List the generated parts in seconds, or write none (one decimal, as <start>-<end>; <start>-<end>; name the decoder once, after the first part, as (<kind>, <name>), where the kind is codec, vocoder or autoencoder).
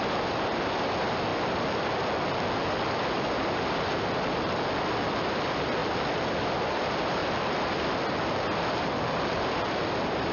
0.0-1.3 (vocoder, BigVGAN v2); 3.1-5.8; 6.6-7.2; 9.3-10.3